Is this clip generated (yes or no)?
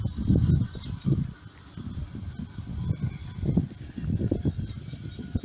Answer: no